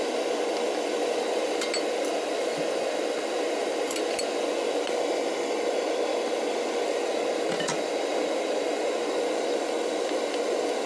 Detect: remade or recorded recorded